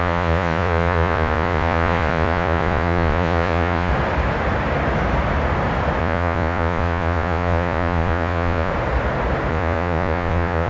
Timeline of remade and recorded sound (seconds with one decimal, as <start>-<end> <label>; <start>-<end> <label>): 0.0-3.9 remade; 3.9-6.0 recorded; 6.0-8.7 remade; 8.7-9.5 recorded; 9.5-10.7 remade